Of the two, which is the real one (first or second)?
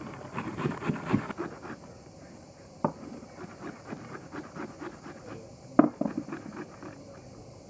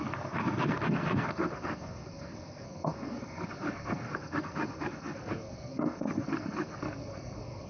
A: first